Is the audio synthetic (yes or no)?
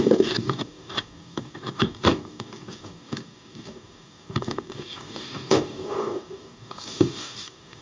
yes